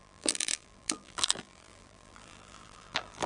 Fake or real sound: fake